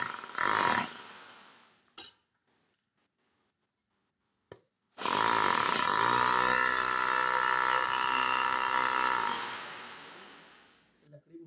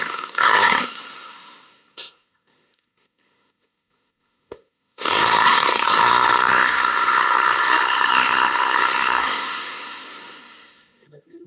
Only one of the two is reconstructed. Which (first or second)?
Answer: second